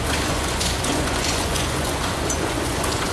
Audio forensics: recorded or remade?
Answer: remade